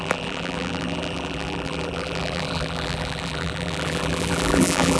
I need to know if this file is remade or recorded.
remade